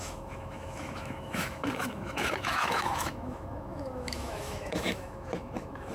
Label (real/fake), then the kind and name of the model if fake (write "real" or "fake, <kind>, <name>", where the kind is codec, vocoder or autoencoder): fake, autoencoder, DAC-VAE